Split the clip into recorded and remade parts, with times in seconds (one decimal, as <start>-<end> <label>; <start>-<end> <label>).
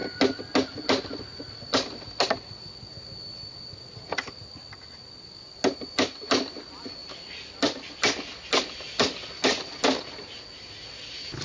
0.0-11.4 recorded